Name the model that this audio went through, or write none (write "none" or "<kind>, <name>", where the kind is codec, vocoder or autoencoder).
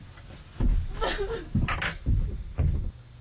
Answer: none